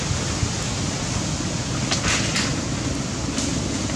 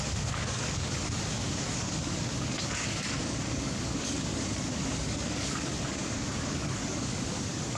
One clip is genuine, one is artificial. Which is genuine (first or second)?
first